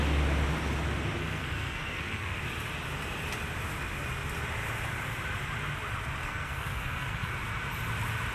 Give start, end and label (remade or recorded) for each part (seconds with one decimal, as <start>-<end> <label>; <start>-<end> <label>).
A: 0.0-1.2 recorded; 1.2-2.4 remade; 2.4-6.2 recorded; 6.2-7.3 remade; 7.3-8.3 recorded